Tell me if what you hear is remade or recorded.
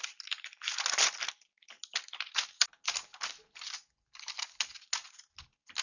recorded